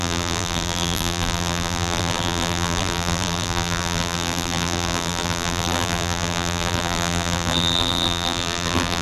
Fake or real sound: fake